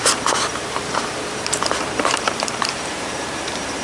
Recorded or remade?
remade